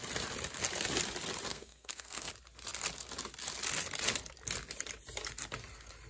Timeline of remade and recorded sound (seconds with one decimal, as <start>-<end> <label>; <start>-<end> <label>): 0.0-1.5 recorded; 1.5-2.3 remade; 2.3-6.1 recorded